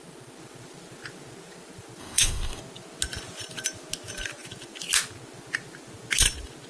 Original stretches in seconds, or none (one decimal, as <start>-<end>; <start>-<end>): 0.0-2.0; 2.6-6.7

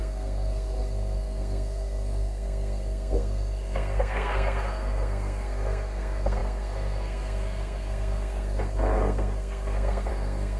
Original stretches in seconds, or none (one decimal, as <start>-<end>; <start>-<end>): none

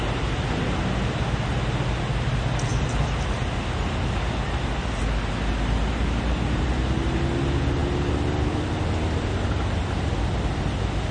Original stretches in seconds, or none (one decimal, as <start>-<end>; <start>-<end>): 0.0-11.1

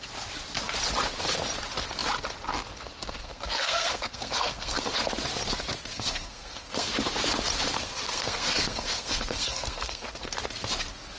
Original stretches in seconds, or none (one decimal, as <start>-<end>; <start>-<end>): 0.0-3.2; 4.8-5.9; 6.9-7.8; 10.2-11.2

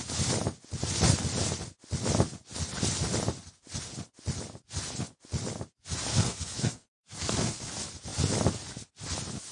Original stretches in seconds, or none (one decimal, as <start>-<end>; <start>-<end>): 0.0-6.1; 7.7-9.5

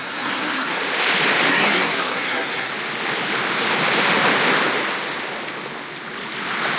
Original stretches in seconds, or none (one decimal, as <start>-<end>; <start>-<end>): 0.8-1.5; 2.7-6.8

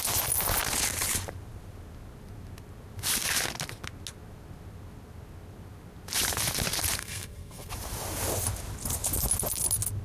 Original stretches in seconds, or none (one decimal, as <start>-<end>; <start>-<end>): 0.0-7.0; 7.7-10.0

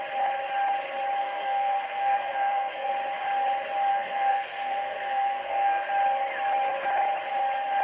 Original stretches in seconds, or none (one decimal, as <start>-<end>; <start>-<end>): 0.0-1.2; 2.9-3.9; 5.9-7.8